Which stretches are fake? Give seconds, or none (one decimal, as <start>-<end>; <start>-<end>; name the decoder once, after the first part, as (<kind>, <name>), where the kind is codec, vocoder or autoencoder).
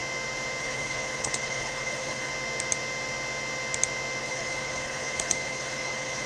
0.6-2.3 (codec, HILCodec); 4.2-6.3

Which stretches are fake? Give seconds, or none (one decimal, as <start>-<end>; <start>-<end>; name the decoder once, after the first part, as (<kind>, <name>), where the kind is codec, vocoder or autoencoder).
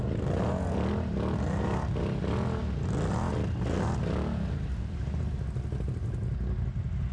none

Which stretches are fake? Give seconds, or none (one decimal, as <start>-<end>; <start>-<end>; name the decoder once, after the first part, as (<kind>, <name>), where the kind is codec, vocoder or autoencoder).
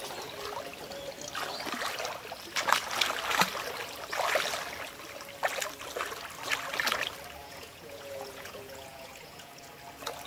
7.4-9.7 (vocoder, Vocos)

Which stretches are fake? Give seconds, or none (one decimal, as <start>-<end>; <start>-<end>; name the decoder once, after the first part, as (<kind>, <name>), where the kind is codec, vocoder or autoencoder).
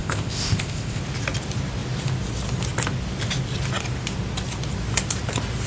0.0-1.0 (codec, ZipCodec)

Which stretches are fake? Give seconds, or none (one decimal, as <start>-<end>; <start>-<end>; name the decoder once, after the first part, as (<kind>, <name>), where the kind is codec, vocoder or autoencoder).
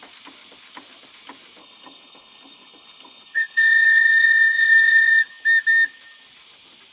1.6-5.3 (codec, HILCodec)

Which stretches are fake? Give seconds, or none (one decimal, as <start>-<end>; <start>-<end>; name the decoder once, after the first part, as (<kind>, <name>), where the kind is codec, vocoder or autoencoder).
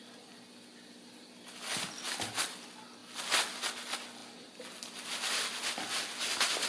none